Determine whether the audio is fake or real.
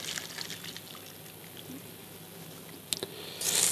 real